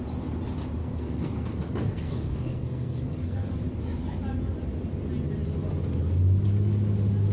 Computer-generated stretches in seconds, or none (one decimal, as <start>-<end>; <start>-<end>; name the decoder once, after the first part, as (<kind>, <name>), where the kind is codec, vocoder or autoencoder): 0.8-3.5 (codec, SNAC)